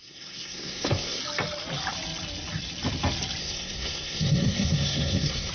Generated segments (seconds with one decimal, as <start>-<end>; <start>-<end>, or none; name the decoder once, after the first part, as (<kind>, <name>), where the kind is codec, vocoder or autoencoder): 0.0-1.2 (codec, SNAC); 3.4-5.5